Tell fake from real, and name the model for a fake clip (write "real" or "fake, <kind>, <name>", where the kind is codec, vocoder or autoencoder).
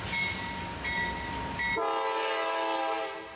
real